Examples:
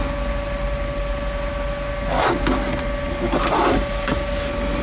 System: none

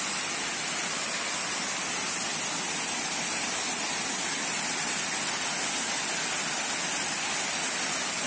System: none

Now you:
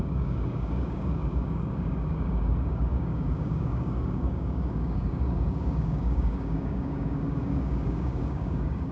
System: codec, DAC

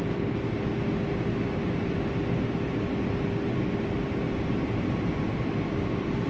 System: none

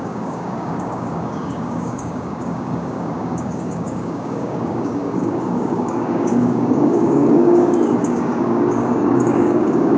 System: codec, DAC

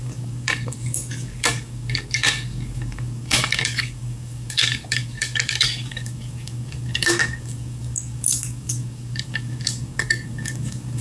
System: codec, DAC